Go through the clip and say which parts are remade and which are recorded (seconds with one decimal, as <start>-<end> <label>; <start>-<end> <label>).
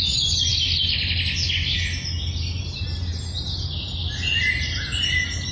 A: 0.0-5.5 recorded